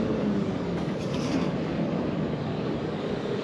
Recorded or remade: remade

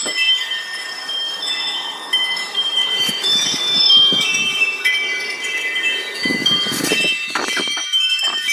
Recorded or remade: remade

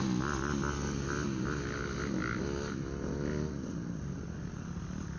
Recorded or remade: recorded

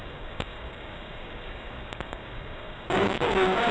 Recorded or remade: remade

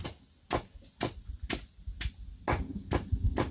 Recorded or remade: recorded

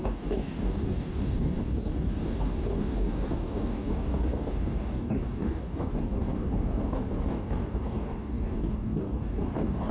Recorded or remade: remade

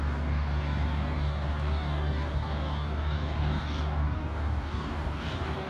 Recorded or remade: remade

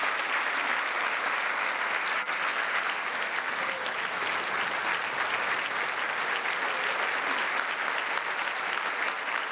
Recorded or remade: recorded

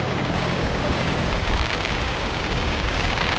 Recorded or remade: remade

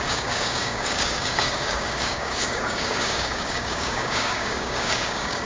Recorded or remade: remade